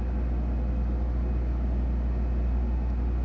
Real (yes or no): yes